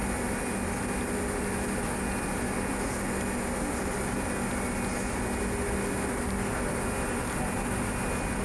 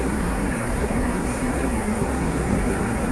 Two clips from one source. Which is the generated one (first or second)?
second